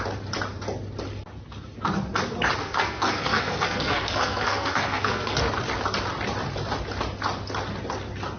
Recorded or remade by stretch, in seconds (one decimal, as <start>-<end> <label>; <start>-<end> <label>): 0.0-2.6 recorded; 2.6-5.4 remade; 5.4-8.4 recorded